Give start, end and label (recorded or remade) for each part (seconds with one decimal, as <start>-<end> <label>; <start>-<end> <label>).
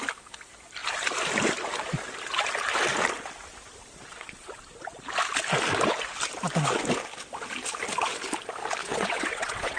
0.0-4.1 recorded; 4.1-4.6 remade; 4.6-8.8 recorded; 8.8-9.8 remade